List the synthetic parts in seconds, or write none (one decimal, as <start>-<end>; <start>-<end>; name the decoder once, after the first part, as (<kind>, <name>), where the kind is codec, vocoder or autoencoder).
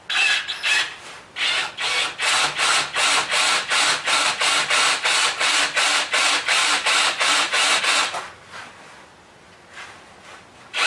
6.6-7.8 (vocoder, BigVGAN v2)